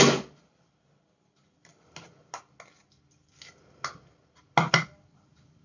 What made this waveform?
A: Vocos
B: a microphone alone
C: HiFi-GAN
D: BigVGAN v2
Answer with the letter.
B